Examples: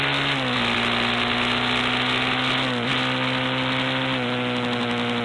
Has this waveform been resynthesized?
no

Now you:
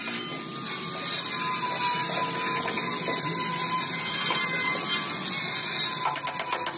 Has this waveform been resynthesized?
no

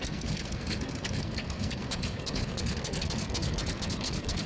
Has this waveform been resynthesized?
yes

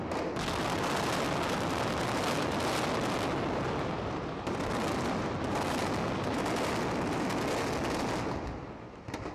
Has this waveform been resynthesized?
no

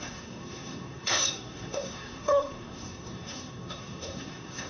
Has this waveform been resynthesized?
yes